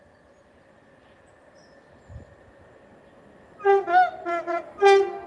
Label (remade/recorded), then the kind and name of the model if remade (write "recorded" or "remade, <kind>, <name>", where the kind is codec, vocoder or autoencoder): recorded